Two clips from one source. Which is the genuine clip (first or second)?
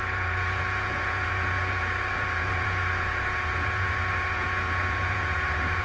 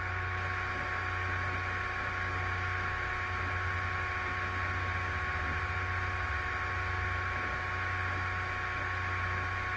second